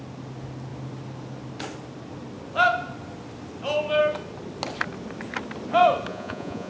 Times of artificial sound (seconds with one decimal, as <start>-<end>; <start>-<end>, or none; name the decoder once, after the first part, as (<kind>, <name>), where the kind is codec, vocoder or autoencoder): 6.1-6.7 (vocoder, Vocos)